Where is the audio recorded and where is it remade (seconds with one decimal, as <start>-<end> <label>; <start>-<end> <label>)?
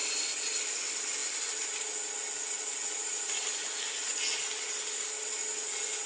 0.0-6.1 recorded